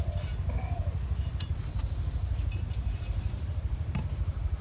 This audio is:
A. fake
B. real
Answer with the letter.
B